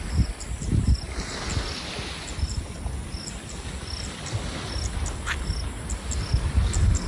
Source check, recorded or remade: recorded